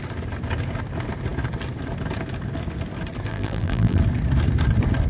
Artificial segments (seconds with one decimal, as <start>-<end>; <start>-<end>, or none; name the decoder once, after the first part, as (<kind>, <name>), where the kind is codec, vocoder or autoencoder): 3.3-4.0 (vocoder, BigVGAN v2)